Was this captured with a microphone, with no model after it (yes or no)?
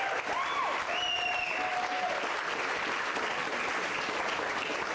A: yes